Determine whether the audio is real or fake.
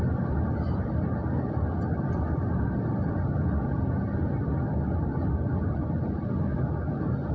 real